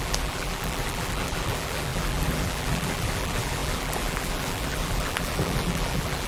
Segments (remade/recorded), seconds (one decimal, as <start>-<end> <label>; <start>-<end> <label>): 0.0-6.3 remade